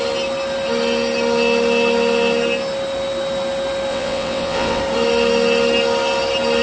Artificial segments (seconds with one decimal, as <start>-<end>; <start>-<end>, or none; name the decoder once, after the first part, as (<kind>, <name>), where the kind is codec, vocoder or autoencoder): 3.9-4.8 (vocoder, WaveNeXt)